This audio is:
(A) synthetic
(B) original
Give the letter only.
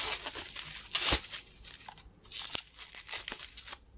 B